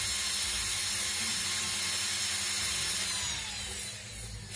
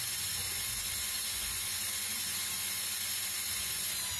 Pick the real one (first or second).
first